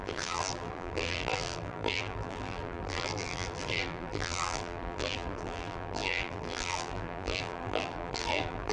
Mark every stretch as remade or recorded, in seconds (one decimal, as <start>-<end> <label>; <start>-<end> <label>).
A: 0.0-8.7 remade